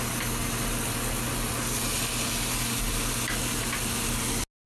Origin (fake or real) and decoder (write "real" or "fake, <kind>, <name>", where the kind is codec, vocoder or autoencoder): real